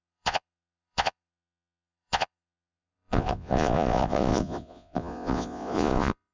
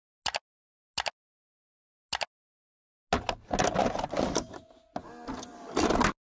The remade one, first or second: first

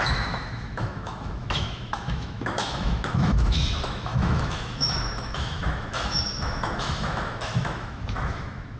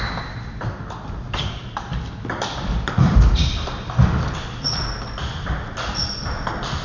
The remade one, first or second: first